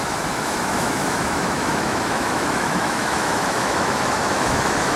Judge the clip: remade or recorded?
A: remade